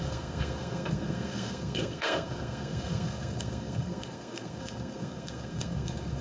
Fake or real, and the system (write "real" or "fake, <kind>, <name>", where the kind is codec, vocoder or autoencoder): fake, codec, SNAC